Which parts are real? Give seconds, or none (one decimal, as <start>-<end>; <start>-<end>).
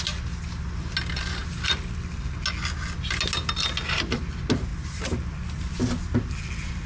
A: 0.0-6.9